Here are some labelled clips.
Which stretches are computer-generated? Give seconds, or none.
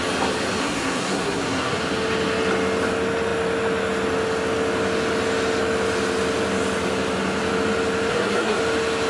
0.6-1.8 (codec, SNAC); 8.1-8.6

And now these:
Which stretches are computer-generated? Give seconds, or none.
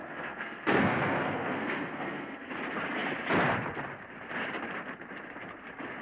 0.0-2.5 (codec, SNAC)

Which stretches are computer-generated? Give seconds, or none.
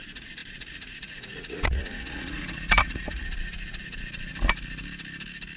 0.0-4.3 (vocoder, Vocos)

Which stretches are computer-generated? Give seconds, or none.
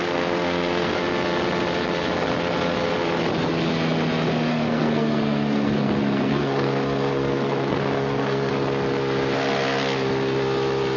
0.0-1.0 (codec, SNAC); 4.5-8.5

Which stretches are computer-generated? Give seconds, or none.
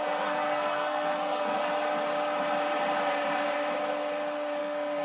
0.0-1.6 (codec, SNAC); 4.6-5.0